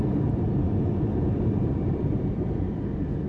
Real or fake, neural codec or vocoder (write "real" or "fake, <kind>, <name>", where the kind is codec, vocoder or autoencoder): fake, vocoder, BigVGAN v2